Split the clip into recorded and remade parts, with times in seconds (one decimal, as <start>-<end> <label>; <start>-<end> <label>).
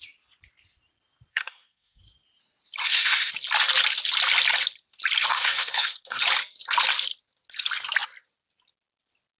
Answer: 0.0-1.3 recorded; 1.3-2.0 remade; 2.0-2.8 recorded; 2.8-3.3 remade; 3.3-5.3 recorded; 5.3-6.2 remade; 6.2-9.4 recorded